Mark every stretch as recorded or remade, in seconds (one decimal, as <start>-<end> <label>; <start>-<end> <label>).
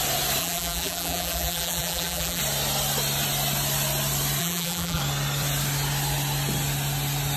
0.0-0.4 recorded; 0.4-2.4 remade; 2.4-4.4 recorded; 4.4-5.0 remade; 5.0-7.4 recorded